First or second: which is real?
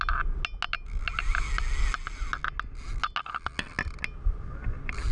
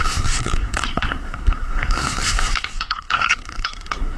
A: first